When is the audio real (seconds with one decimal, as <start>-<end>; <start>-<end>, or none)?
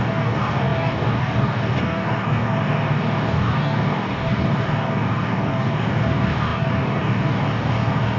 none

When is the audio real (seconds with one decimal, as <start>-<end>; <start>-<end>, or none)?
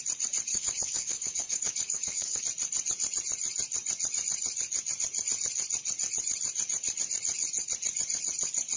0.0-0.5; 2.4-8.8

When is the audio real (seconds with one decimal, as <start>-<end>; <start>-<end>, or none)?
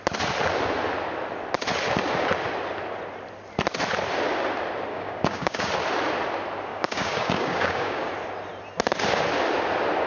0.0-4.9; 5.7-6.7; 8.1-10.1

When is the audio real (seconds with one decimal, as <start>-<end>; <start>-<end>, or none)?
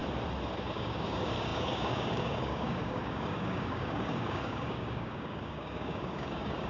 0.0-0.6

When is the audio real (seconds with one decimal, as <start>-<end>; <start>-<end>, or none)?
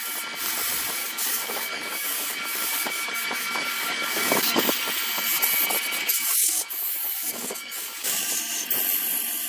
0.0-1.0; 4.7-6.0; 8.3-9.5